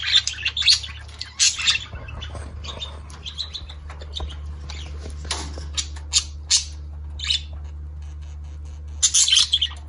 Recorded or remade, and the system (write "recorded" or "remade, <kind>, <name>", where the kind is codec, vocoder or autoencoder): recorded